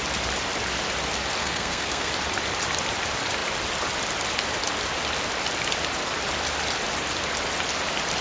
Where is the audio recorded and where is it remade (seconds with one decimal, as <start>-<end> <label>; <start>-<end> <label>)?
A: 0.0-1.4 recorded; 1.4-2.1 remade; 2.1-8.2 recorded